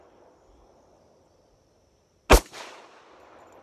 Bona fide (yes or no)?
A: yes